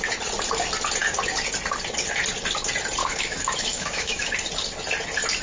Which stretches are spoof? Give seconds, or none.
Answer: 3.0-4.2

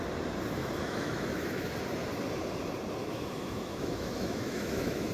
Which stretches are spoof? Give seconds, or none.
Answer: 0.6-1.7; 3.0-5.1

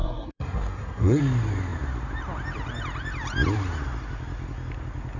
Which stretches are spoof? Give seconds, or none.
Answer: 0.0-1.2